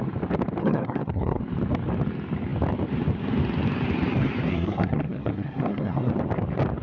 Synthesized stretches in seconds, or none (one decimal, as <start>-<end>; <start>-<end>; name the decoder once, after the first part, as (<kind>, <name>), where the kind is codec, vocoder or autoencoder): 0.6-1.4 (codec, SNAC); 4.5-6.1